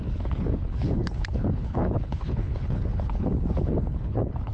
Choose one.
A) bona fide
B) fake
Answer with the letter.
B